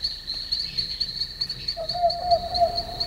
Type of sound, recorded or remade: recorded